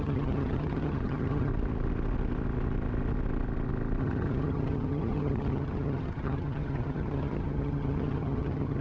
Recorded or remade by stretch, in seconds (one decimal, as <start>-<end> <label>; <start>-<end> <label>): 0.0-1.5 remade; 1.5-4.0 recorded; 4.0-8.8 remade